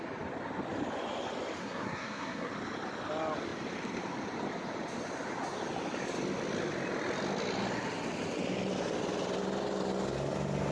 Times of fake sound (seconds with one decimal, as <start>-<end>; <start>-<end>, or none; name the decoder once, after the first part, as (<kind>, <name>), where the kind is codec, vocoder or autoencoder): 1.6-2.5 (codec, SNAC)